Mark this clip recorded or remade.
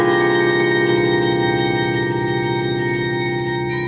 recorded